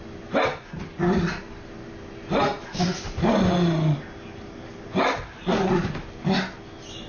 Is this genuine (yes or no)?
yes